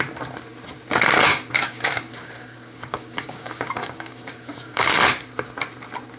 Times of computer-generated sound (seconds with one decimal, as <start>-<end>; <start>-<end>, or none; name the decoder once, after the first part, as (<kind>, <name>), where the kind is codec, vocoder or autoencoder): 1.3-5.0 (codec, DAC)